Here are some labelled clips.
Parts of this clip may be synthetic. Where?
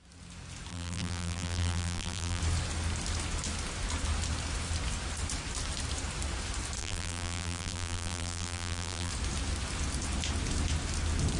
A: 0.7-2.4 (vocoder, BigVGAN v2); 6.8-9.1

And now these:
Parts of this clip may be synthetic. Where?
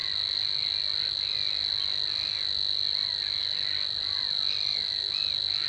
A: none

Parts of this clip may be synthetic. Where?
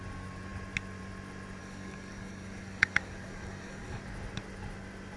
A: 1.6-4.0 (codec, DAC)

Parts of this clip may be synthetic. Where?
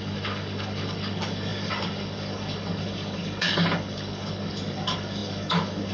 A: 0.0-5.9 (codec, DAC)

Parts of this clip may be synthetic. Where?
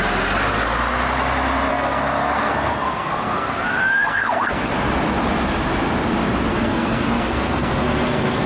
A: 1.7-4.7 (codec, SNAC); 6.5-8.5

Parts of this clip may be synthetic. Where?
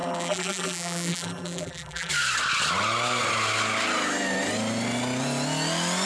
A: 0.0-2.1 (vocoder, BigVGAN v2)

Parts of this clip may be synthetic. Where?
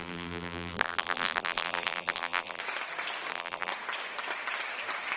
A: 0.0-2.6 (vocoder, BigVGAN v2); 3.3-3.7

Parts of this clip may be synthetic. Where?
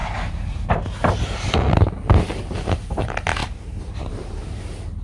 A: 0.0-0.7 (vocoder, BigVGAN v2); 3.4-4.6